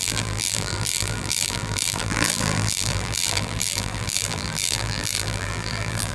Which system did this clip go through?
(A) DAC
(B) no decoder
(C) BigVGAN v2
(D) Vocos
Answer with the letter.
C